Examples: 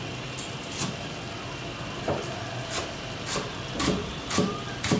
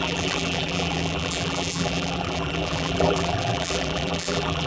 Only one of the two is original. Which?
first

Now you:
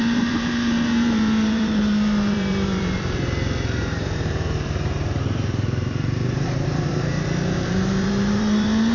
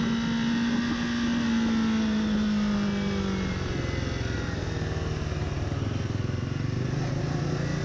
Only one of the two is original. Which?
second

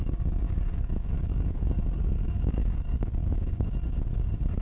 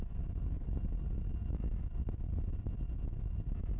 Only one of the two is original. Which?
second